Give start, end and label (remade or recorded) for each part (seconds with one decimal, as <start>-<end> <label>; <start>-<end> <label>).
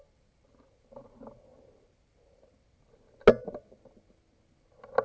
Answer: 0.0-5.0 recorded